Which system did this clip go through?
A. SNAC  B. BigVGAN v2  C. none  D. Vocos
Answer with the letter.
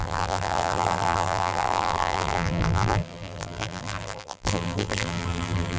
B